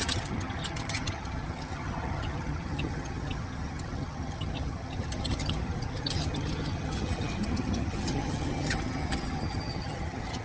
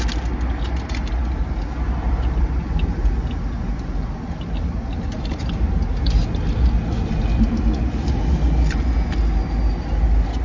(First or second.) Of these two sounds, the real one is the second